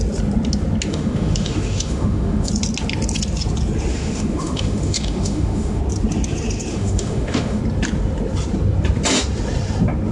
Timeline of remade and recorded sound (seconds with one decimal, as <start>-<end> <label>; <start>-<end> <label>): 0.0-0.9 recorded; 0.9-2.5 remade; 2.5-3.9 recorded; 3.9-5.8 remade; 5.8-6.7 recorded; 6.7-7.6 remade; 7.6-10.1 recorded